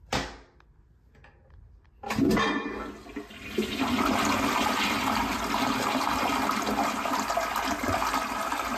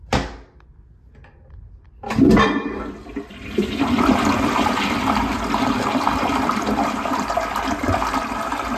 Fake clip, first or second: second